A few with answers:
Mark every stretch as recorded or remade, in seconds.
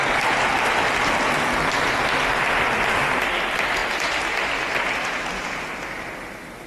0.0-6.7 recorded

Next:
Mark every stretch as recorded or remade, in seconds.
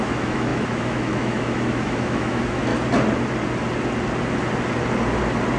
0.0-2.7 remade; 2.7-5.6 recorded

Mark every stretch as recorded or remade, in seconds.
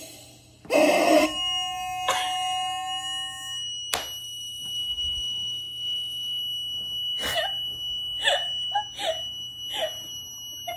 0.0-4.2 recorded; 4.2-6.4 remade; 6.4-10.8 recorded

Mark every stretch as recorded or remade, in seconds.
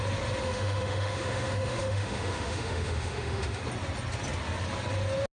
0.0-0.4 recorded; 0.4-3.6 remade; 3.6-5.4 recorded